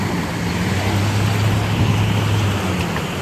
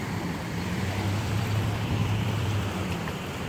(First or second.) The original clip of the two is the first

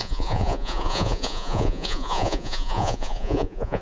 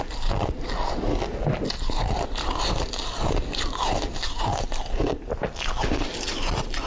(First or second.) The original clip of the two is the second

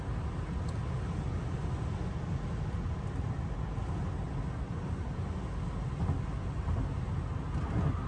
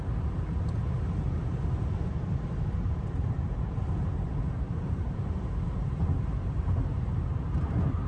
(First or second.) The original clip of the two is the first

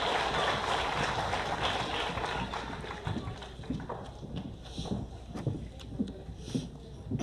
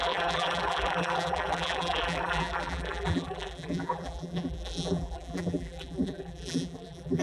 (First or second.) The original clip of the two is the first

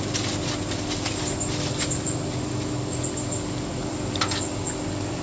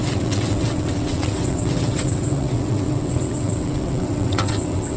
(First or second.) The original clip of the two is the first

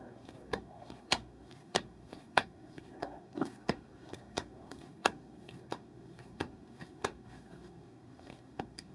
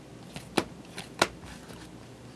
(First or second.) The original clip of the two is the second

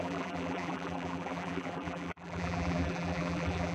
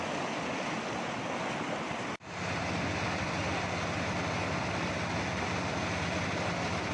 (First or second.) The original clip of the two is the second